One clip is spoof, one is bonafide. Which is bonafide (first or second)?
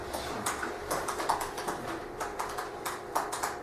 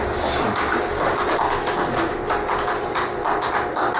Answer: second